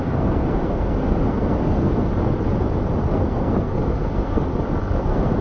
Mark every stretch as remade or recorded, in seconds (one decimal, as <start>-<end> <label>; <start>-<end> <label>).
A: 0.0-2.1 remade; 2.1-3.1 recorded; 3.1-4.5 remade; 4.5-5.0 recorded; 5.0-5.4 remade